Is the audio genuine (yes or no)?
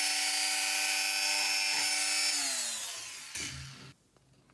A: yes